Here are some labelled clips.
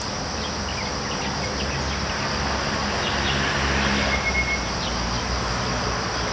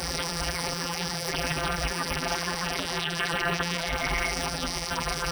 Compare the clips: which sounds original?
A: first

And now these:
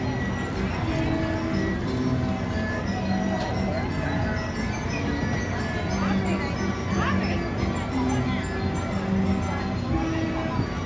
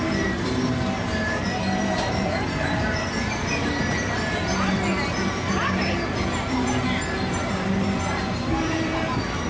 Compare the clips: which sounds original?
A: first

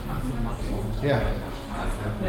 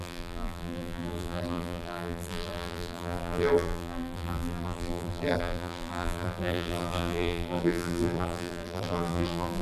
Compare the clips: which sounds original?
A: first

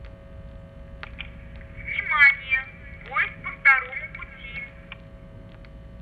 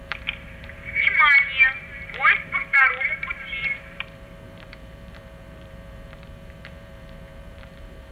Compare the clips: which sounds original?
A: first